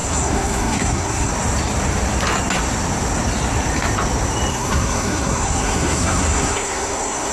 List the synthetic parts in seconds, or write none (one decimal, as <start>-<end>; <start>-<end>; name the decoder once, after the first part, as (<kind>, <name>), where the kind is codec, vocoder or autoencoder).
0.0-1.3 (codec, SNAC); 4.5-7.3